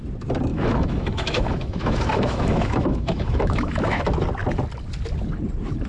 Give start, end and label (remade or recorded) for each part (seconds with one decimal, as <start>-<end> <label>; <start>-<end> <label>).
0.0-0.5 recorded; 0.5-4.0 remade; 4.0-5.9 recorded